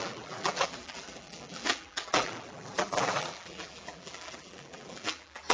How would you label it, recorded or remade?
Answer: remade